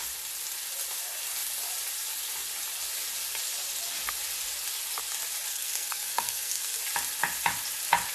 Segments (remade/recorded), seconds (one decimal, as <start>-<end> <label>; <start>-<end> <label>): 0.0-5.5 recorded; 5.5-6.8 remade; 6.8-8.1 recorded